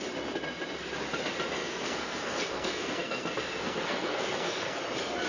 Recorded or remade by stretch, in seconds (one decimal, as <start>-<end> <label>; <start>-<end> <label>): 0.0-1.6 recorded; 1.6-4.8 remade; 4.8-5.3 recorded